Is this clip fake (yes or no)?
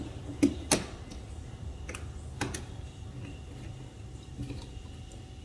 no